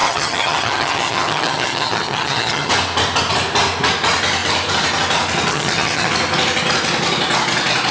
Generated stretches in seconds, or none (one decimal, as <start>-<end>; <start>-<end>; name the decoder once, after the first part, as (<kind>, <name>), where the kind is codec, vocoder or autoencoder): 0.0-2.7 (vocoder, HiFi-GAN); 5.5-6.1